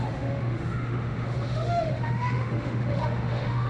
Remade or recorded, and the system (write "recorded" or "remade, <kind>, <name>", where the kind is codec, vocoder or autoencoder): remade, autoencoder, DAC-VAE